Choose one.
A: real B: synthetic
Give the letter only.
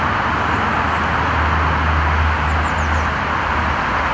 A